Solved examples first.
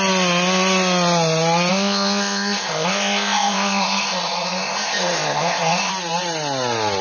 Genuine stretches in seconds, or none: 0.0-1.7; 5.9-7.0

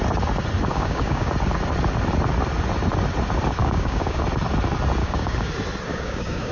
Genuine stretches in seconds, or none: 0.0-0.7; 1.3-3.6; 4.2-5.0; 5.5-5.9

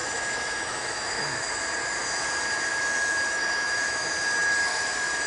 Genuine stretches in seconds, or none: 1.5-2.7; 4.1-4.7

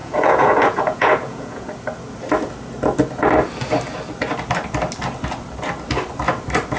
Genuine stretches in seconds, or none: 1.7-6.8

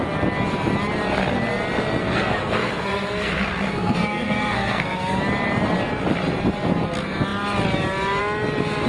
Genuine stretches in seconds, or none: 0.0-2.0; 5.2-8.9

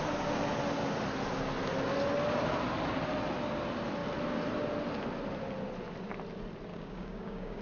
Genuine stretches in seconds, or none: 0.0-6.7